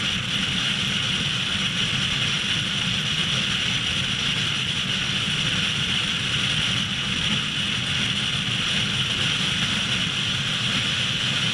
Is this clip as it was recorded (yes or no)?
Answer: yes